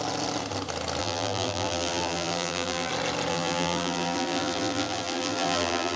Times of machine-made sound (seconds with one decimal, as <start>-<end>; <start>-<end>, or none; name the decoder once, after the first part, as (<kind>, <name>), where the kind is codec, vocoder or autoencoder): 1.0-2.9 (vocoder, BigVGAN v2); 3.3-6.0